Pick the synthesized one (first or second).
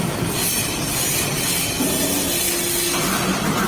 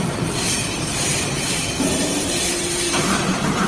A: second